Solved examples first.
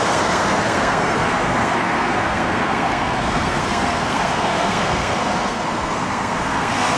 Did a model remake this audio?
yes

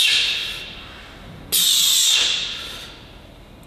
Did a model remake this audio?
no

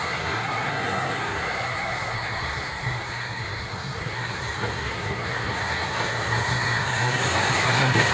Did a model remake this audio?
yes